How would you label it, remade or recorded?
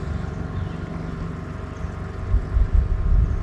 recorded